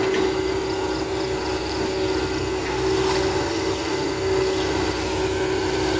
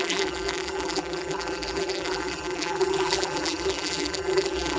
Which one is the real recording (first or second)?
first